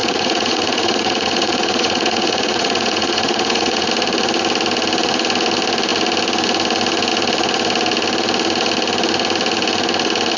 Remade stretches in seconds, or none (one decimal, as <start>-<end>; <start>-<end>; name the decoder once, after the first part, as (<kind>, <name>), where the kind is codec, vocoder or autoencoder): 0.0-3.9 (vocoder, Vocos)